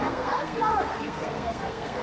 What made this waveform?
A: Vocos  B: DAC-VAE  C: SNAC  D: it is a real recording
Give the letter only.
C